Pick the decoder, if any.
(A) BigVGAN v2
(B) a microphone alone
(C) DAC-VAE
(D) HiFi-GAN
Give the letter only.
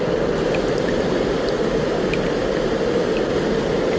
B